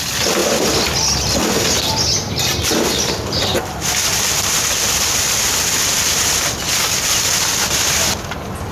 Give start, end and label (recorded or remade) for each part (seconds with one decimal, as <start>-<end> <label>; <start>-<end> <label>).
0.0-8.7 recorded